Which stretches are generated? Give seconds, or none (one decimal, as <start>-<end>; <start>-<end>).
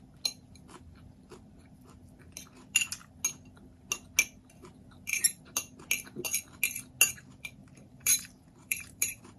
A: 7.6-9.4